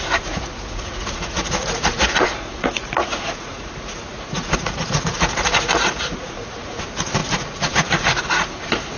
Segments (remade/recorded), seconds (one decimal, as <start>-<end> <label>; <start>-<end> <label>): 0.0-9.0 remade